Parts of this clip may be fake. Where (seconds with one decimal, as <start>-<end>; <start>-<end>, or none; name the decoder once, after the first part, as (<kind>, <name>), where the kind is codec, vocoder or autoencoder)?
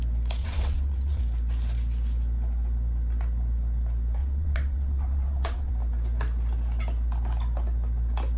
0.4-1.2 (vocoder, WaveNeXt); 4.2-5.7